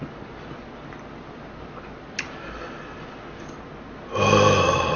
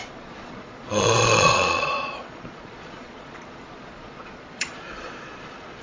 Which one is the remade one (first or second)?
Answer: second